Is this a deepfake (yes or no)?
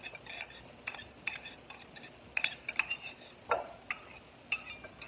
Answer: no